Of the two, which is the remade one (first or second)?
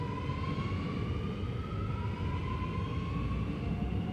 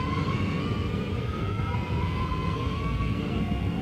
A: second